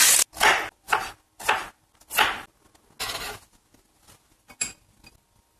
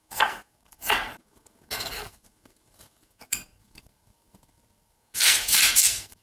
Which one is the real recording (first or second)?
first